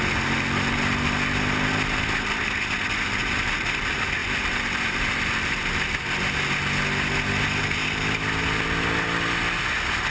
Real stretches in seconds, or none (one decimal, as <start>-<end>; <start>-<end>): 0.0-4.2; 6.5-10.1